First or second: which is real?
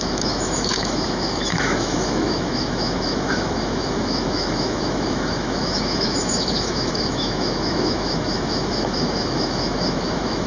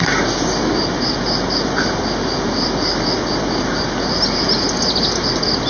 second